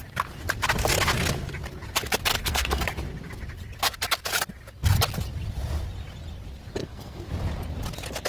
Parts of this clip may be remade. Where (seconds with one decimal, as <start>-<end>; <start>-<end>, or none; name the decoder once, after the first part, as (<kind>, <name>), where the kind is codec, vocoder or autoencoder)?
2.3-2.8 (codec, SNAC); 6.8-7.3